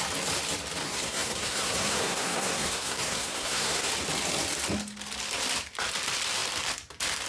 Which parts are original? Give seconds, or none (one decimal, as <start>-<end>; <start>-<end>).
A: 0.0-0.8; 3.9-7.3